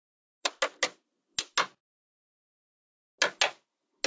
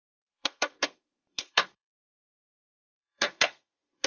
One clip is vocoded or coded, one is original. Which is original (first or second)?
first